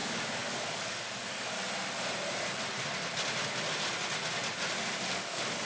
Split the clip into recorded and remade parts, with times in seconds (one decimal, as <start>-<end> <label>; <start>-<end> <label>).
0.0-1.6 remade; 1.6-5.0 recorded; 5.0-5.7 remade